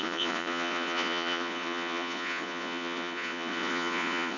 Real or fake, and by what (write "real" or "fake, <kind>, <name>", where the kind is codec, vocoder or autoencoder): fake, vocoder, Vocos